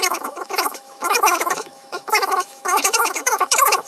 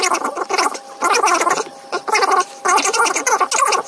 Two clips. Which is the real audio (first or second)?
second